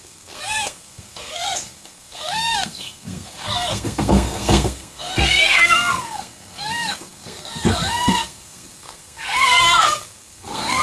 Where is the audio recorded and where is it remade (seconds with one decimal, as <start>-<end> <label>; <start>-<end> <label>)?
0.0-10.8 remade